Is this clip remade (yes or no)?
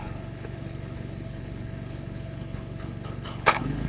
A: yes